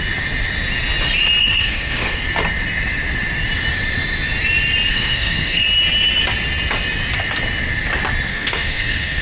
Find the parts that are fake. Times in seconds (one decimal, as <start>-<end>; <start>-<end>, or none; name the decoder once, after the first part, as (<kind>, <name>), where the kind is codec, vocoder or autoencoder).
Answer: 1.4-2.2 (codec, SNAC); 4.9-5.6; 8.3-9.2